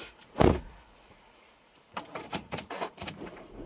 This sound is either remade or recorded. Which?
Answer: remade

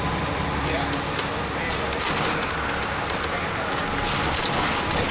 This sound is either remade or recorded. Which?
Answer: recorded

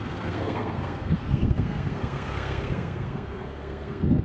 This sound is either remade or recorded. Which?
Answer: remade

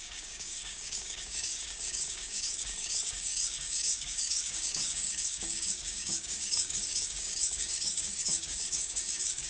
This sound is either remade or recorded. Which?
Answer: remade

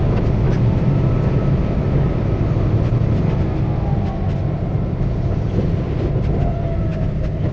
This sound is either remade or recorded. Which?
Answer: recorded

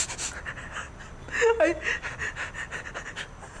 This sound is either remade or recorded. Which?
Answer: recorded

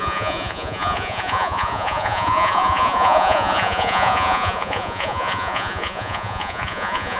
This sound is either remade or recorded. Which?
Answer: remade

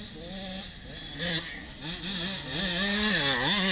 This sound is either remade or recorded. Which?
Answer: recorded